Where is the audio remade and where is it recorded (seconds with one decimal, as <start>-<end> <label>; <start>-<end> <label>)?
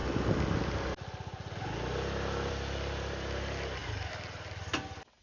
0.0-5.2 recorded